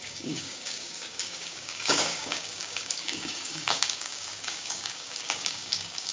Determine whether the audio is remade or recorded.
remade